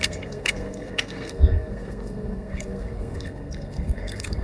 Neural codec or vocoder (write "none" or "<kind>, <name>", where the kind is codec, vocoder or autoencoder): codec, SNAC